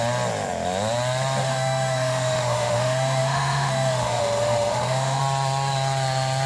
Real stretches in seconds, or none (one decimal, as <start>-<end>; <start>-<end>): 0.0-1.4; 5.2-6.5